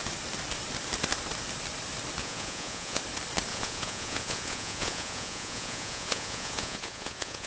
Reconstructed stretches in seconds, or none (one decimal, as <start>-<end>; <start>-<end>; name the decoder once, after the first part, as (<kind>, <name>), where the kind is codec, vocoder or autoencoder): 2.2-3.0 (vocoder, Vocos); 3.5-7.5